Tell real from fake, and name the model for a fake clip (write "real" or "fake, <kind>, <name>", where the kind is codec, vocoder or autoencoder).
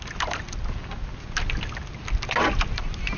real